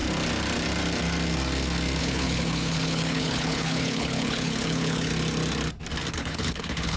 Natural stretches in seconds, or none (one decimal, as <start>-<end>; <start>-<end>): 0.0-2.0; 5.1-6.1